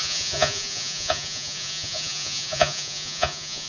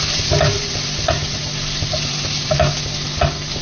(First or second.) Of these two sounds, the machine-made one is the first